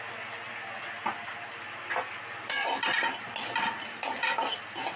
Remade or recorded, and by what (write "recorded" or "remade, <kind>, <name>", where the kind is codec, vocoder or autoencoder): recorded